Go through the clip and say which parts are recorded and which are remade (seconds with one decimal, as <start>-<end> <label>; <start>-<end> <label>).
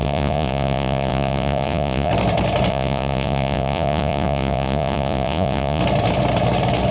0.0-2.1 remade; 2.1-2.7 recorded; 2.7-5.8 remade; 5.8-6.9 recorded